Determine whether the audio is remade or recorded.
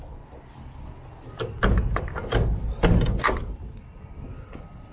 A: recorded